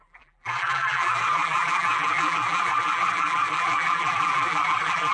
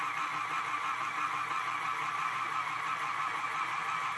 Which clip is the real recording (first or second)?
second